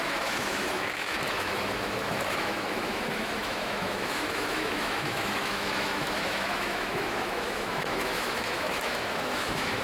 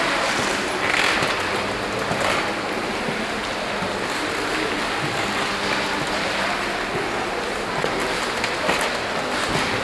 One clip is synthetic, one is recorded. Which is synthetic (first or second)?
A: first